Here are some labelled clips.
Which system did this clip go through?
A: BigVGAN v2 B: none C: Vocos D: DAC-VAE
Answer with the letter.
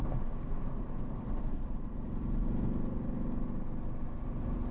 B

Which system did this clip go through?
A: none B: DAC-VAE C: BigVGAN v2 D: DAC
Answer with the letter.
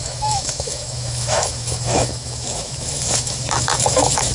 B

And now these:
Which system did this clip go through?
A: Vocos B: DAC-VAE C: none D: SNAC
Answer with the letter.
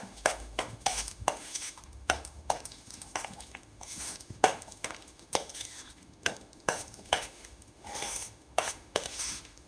B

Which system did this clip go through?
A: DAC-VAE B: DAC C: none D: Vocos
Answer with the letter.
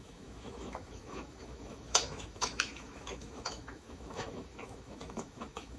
A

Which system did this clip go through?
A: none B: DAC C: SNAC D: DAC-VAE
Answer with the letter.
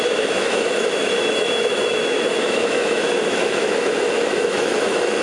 D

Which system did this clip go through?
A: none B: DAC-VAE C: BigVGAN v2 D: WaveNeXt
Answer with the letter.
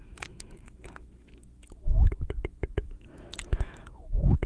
B